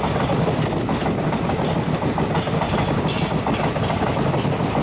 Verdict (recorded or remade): recorded